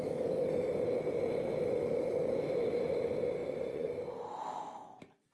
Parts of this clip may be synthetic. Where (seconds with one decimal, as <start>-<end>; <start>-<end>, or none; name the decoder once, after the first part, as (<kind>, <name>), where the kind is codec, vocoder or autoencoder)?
3.4-3.9 (vocoder, Vocos)